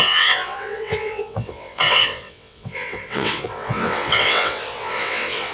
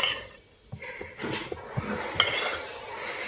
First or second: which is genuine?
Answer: second